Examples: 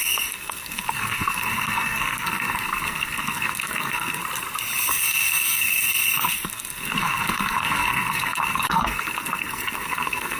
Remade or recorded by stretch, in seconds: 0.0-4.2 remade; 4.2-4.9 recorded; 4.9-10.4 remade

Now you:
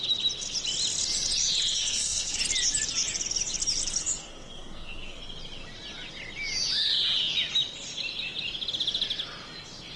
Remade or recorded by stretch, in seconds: 0.0-1.7 recorded; 1.7-2.4 remade; 2.4-4.2 recorded; 4.2-5.2 remade; 5.2-10.0 recorded

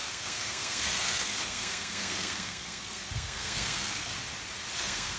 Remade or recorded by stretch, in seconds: 0.0-4.1 remade; 4.1-4.8 recorded; 4.8-5.2 remade

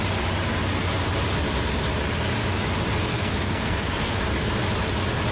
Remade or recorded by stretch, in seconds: 0.0-3.1 recorded; 3.1-4.2 remade; 4.2-5.3 recorded

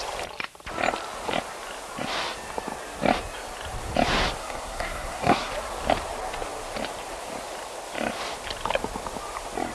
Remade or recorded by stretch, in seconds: 0.0-4.4 recorded; 4.4-5.5 remade; 5.5-9.7 recorded